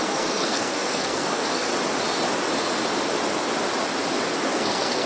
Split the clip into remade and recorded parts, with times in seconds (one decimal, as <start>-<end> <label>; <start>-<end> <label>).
0.0-1.7 remade; 1.7-4.5 recorded; 4.5-5.1 remade